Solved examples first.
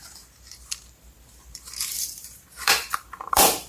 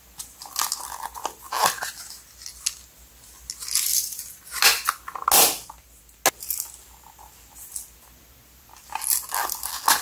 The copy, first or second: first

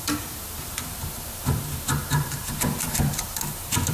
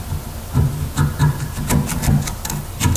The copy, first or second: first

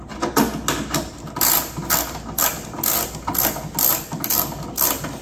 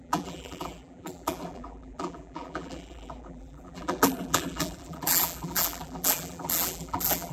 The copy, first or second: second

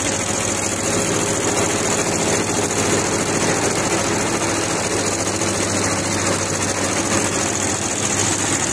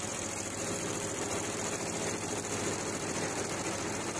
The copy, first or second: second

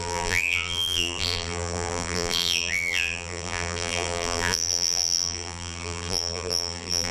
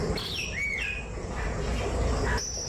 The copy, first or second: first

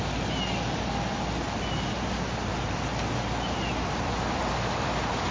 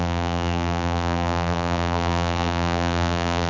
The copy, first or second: second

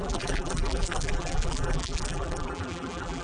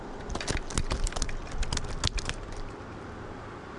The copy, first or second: first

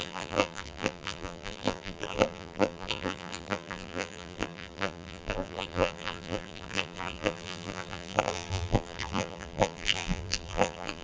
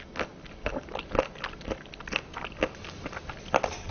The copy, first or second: first